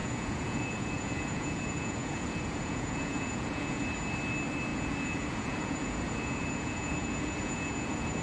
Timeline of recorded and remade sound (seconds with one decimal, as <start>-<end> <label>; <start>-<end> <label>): 0.0-3.8 remade; 3.8-4.7 recorded; 4.7-8.2 remade